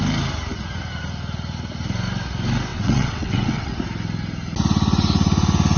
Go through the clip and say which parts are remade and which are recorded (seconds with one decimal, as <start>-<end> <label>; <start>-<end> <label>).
0.0-2.7 recorded; 2.7-3.7 remade; 3.7-5.8 recorded